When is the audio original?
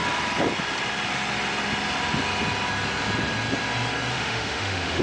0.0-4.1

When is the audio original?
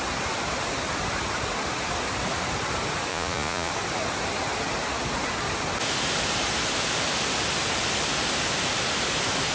0.0-3.1; 3.7-9.5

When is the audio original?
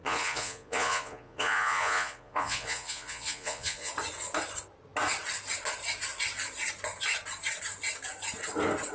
3.9-8.9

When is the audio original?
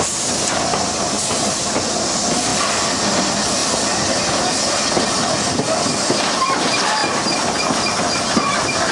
0.0-8.9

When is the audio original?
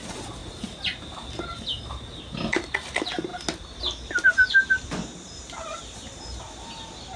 0.0-7.2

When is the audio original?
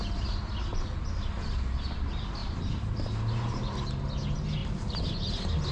0.0-2.4; 3.0-4.6; 5.3-5.7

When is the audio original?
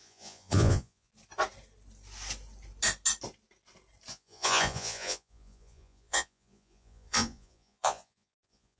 1.1-4.1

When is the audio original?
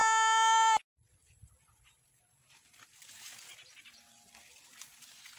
0.0-5.4